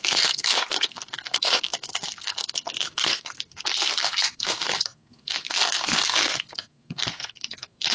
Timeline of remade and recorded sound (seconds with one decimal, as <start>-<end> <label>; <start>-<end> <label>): 0.0-7.9 remade